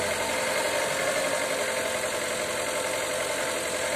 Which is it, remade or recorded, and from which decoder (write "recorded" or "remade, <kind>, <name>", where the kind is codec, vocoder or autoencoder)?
recorded